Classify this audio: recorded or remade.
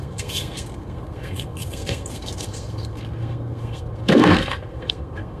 remade